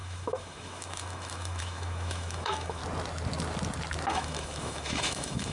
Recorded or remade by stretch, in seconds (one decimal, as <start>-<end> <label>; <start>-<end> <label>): 0.0-2.8 remade; 2.8-4.1 recorded; 4.1-5.5 remade